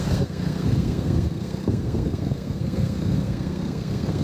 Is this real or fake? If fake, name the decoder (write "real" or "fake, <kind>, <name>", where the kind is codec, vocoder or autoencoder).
fake, codec, SNAC